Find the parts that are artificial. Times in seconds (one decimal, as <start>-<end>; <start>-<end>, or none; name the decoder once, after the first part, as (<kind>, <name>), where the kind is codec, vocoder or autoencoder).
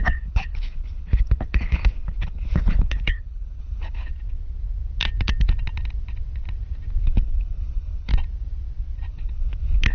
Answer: 0.0-4.1 (codec, HILCodec); 7.0-8.1; 9.1-9.9